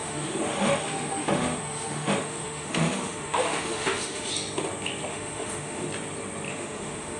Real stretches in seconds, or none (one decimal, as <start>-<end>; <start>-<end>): 4.3-5.1; 5.9-6.5